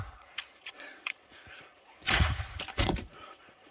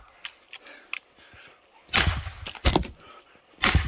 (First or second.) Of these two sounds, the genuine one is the second